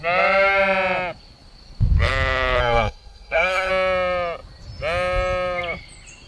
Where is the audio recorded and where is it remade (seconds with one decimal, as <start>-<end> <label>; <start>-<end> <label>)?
0.0-2.6 recorded; 2.6-3.7 remade; 3.7-6.3 recorded

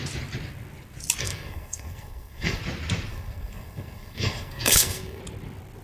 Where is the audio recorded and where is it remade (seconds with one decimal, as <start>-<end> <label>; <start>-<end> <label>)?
0.0-1.2 recorded; 1.2-2.6 remade; 2.6-3.1 recorded; 3.1-5.2 remade; 5.2-5.8 recorded

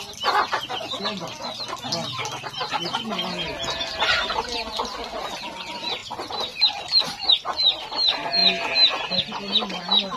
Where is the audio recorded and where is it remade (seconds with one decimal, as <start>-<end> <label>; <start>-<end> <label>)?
0.0-10.2 recorded

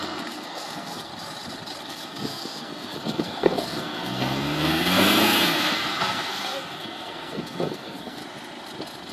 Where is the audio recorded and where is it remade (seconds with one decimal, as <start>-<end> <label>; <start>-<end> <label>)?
0.0-1.1 remade; 1.1-1.8 recorded; 1.8-8.2 remade; 8.2-9.1 recorded

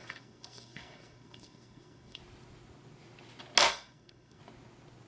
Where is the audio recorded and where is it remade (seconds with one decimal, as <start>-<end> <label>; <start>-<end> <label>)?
0.0-2.2 remade; 2.2-3.7 recorded; 3.7-4.4 remade; 4.4-5.1 recorded